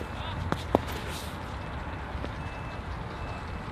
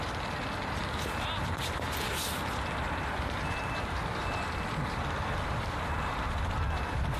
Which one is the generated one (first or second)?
second